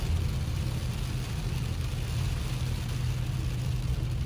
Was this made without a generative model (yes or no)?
yes